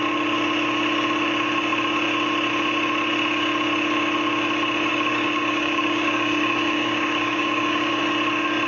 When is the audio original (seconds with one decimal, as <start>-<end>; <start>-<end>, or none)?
0.0-4.9; 8.0-8.7